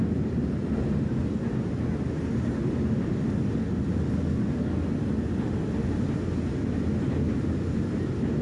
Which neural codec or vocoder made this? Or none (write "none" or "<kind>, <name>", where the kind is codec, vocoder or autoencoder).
none